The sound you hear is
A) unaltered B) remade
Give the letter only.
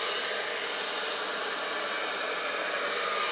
A